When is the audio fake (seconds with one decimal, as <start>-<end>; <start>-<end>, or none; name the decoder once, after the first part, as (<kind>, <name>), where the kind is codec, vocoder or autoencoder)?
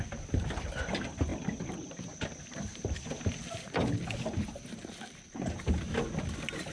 none